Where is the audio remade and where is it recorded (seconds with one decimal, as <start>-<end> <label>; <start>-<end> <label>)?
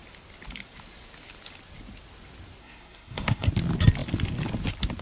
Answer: 0.0-2.6 recorded; 2.6-3.5 remade; 3.5-5.0 recorded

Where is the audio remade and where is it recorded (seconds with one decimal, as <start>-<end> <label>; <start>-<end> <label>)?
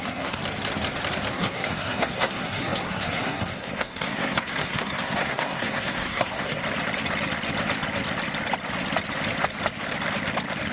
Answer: 0.0-0.4 remade; 0.4-1.3 recorded; 1.3-6.6 remade; 6.6-10.7 recorded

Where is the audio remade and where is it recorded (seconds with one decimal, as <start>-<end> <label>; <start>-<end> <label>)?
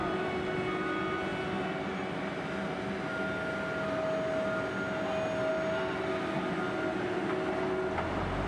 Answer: 0.0-8.5 recorded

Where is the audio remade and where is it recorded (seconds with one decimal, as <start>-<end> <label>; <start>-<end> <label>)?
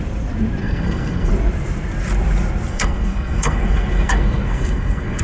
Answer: 0.0-0.6 recorded; 0.6-1.3 remade; 1.3-2.7 recorded; 2.7-5.2 remade